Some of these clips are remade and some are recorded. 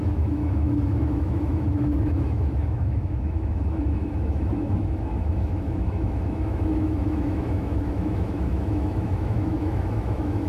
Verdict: remade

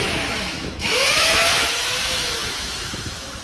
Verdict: remade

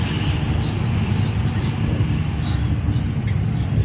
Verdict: recorded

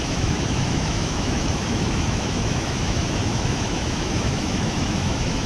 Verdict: remade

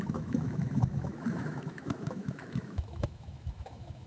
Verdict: remade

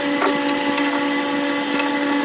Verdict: recorded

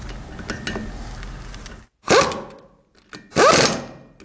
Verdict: recorded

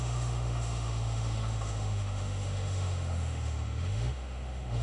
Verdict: remade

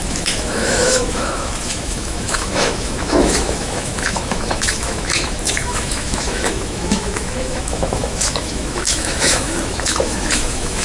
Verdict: remade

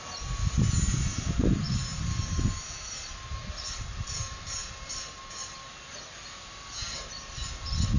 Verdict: recorded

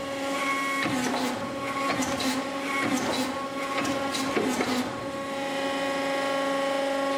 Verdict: recorded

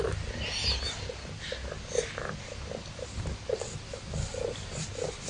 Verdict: recorded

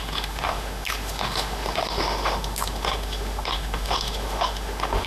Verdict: remade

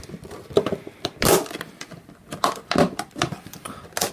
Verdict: recorded